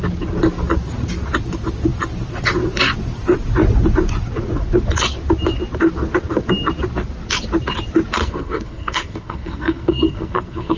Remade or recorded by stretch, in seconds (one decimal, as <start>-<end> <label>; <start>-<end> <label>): 0.0-8.2 recorded; 8.2-10.8 remade